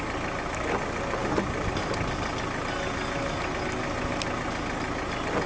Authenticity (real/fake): real